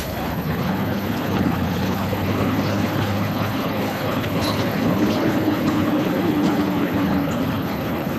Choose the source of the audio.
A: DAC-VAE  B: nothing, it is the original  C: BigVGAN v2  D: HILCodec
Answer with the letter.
D